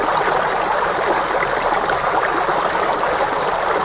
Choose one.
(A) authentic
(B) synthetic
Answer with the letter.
A